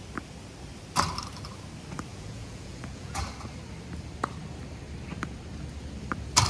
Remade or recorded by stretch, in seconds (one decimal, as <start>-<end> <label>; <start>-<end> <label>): 0.0-2.1 recorded; 2.1-3.2 remade; 3.2-6.5 recorded